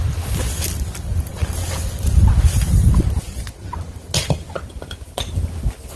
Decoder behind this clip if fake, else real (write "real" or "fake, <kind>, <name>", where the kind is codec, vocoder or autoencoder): real